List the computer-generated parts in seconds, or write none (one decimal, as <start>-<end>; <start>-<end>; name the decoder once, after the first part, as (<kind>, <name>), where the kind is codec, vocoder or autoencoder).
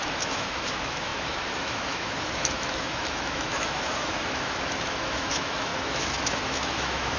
0.0-7.2 (autoencoder, DAC-VAE)